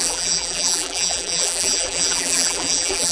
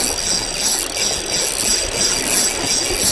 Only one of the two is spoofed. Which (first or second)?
first